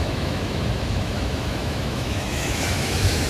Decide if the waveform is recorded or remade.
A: remade